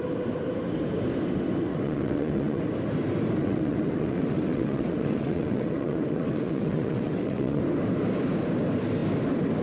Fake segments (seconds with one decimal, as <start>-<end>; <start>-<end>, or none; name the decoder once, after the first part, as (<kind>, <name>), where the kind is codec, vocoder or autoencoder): 1.7-2.6 (vocoder, WaveNeXt); 3.4-7.6